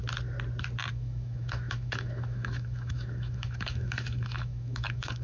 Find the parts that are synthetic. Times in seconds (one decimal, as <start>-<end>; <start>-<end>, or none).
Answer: 0.9-5.2